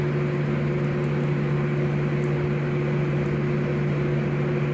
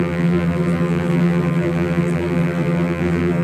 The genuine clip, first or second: first